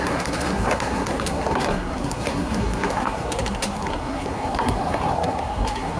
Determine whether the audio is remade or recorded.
remade